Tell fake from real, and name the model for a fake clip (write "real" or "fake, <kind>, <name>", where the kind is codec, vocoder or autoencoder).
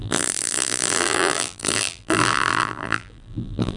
fake, vocoder, BigVGAN v2